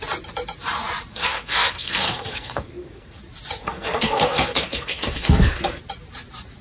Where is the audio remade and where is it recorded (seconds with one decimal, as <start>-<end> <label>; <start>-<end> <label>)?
0.0-1.1 recorded; 1.1-3.2 remade; 3.2-3.6 recorded; 3.6-5.8 remade; 5.8-6.6 recorded